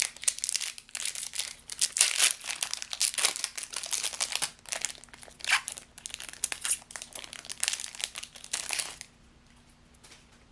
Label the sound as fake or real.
real